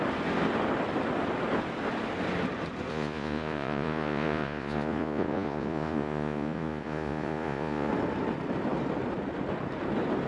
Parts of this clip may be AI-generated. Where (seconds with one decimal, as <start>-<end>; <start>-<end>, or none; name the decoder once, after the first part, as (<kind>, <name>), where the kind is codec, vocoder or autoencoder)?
2.9-7.9 (vocoder, Vocos)

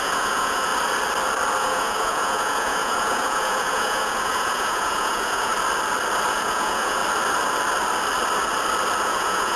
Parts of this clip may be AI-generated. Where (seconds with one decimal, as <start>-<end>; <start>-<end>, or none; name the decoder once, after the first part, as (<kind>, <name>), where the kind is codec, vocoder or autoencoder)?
0.0-0.7 (vocoder, Vocos); 1.6-5.5; 6.3-7.0; 9.0-9.6

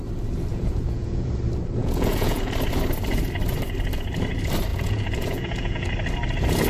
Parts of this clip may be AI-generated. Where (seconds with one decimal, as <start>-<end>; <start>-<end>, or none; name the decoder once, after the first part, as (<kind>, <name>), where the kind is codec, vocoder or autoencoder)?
0.5-1.3 (vocoder, Vocos); 1.8-2.5; 4.7-5.9

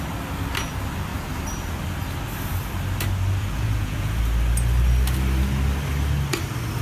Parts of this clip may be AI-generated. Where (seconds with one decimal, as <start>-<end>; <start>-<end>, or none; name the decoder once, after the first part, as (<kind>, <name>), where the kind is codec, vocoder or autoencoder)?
3.4-4.2 (vocoder, Vocos)

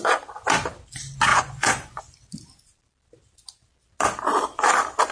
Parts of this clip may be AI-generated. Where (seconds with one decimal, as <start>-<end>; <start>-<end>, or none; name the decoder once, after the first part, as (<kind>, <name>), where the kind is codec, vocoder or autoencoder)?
1.3-2.0 (vocoder, Vocos)